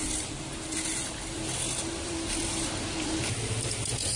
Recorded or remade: remade